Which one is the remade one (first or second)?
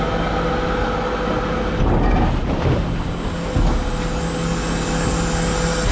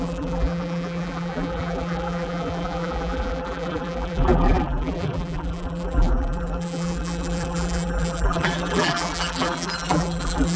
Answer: second